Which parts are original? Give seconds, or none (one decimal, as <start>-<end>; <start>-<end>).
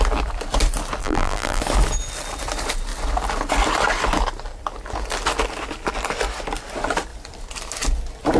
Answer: 0.0-1.0; 1.6-8.4